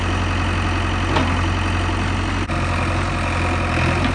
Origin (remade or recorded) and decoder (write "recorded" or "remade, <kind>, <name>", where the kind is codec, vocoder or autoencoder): recorded